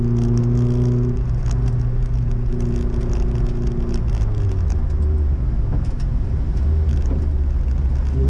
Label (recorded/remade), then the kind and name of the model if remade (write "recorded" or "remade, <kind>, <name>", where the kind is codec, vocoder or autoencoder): recorded